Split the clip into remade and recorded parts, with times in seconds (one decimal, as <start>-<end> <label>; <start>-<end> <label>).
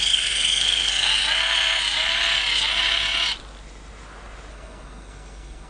0.0-1.1 remade; 1.1-4.5 recorded; 4.5-5.7 remade